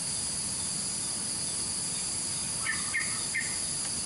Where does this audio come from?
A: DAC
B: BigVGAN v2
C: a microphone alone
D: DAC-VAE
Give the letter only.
C